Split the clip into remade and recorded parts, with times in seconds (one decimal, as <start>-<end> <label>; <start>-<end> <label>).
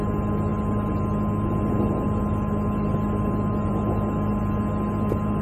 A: 0.0-5.4 recorded